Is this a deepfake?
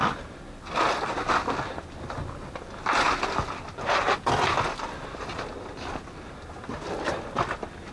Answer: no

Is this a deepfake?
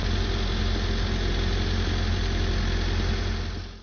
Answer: no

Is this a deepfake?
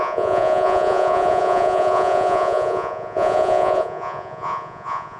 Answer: yes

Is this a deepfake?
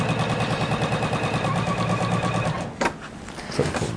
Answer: no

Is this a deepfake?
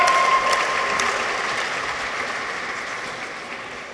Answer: no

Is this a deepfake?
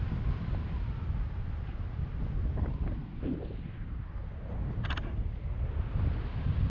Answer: no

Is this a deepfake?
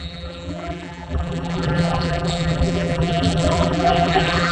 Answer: yes